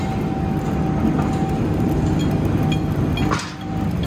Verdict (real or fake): real